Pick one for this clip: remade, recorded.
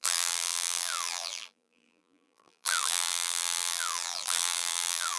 remade